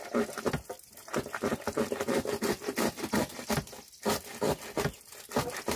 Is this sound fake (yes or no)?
no